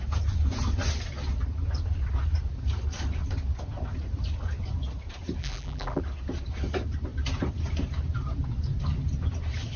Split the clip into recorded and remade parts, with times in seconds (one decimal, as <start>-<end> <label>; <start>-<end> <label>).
0.0-5.4 recorded; 5.4-6.0 remade; 6.0-9.8 recorded